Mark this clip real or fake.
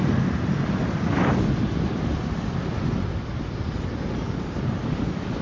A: real